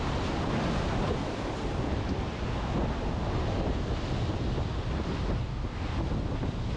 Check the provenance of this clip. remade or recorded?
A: recorded